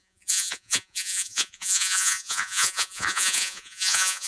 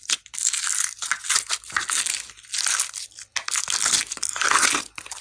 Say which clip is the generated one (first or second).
first